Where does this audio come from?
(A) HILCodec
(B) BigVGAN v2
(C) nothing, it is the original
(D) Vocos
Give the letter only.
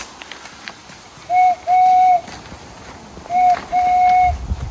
C